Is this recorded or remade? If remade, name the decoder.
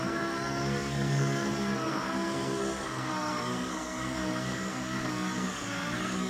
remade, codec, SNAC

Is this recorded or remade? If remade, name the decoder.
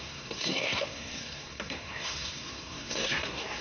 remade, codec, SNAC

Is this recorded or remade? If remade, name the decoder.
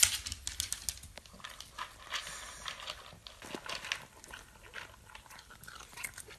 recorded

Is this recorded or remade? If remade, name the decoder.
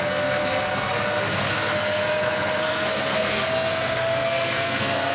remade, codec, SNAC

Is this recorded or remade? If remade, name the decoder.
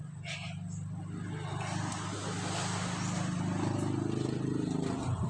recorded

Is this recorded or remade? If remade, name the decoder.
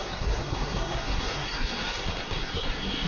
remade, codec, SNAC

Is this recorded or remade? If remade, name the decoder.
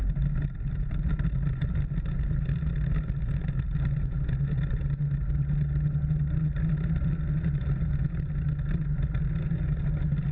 recorded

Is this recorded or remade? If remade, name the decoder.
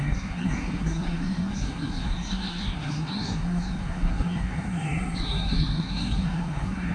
remade, codec, SNAC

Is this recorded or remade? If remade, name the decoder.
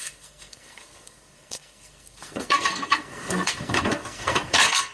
remade, codec, SNAC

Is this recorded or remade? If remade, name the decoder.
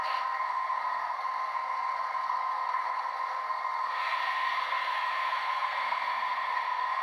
remade, codec, SNAC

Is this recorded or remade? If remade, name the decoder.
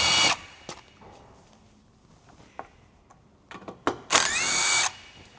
recorded